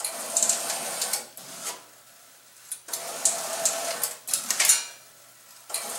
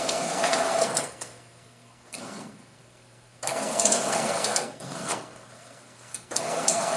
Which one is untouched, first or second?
first